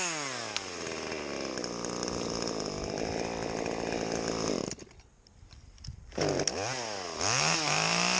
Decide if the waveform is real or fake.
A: real